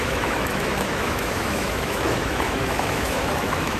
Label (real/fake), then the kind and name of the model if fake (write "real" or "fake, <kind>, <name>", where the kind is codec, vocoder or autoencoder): fake, autoencoder, DAC-VAE